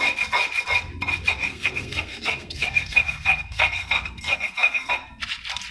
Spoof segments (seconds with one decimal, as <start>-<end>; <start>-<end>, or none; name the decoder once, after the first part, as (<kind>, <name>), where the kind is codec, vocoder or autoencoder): 1.5-4.9 (codec, SNAC)